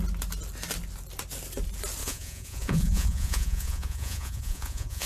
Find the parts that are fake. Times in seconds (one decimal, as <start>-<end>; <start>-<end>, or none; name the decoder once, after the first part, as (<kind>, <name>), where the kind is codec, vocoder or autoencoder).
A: 2.0-5.1 (vocoder, Vocos)